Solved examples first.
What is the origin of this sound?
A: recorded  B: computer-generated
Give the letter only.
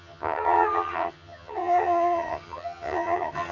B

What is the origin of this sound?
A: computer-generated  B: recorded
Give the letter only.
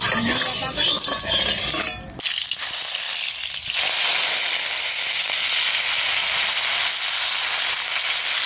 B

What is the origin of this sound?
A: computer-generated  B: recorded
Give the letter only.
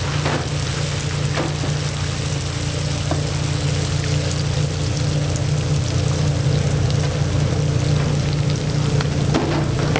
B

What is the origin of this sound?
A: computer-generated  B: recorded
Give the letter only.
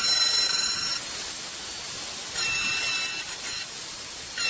B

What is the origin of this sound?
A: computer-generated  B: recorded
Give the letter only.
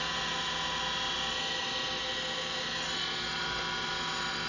B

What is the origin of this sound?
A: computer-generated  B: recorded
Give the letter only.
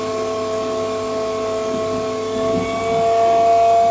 B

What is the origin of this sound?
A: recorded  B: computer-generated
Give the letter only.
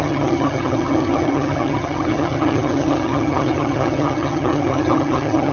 B